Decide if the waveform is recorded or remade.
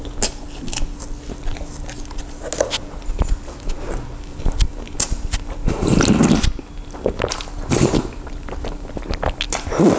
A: recorded